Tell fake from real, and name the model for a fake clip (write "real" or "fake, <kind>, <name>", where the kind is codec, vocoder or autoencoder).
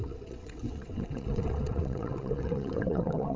fake, vocoder, WaveNeXt